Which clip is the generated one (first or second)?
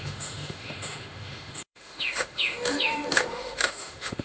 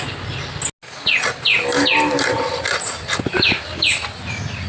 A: first